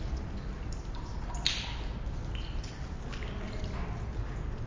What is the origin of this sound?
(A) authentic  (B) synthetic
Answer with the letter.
A